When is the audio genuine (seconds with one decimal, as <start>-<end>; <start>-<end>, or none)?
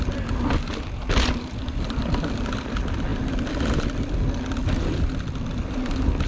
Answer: 0.0-6.3